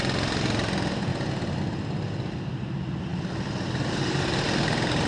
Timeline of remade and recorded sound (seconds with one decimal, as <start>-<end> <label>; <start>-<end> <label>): 0.0-5.1 recorded